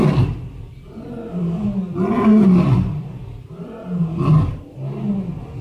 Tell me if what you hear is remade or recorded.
recorded